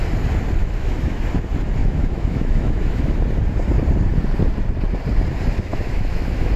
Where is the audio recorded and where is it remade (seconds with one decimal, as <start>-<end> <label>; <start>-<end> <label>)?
0.0-0.6 recorded; 0.6-1.4 remade; 1.4-1.8 recorded; 1.8-3.1 remade; 3.1-5.7 recorded; 5.7-6.6 remade